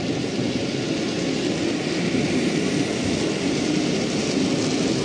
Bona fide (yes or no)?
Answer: yes